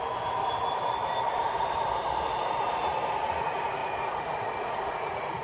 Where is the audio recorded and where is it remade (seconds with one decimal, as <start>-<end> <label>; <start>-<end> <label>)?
0.0-3.2 recorded; 3.2-5.4 remade